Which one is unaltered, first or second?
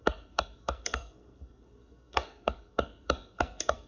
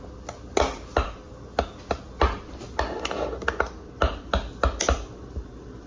second